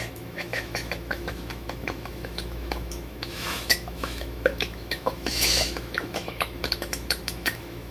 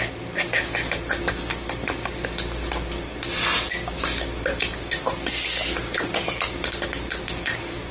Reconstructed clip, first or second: first